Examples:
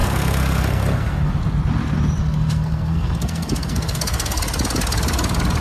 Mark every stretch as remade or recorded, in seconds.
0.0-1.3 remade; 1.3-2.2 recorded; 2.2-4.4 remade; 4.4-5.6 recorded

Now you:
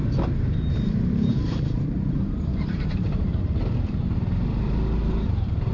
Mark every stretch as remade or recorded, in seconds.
0.0-3.4 remade; 3.4-5.0 recorded; 5.0-5.7 remade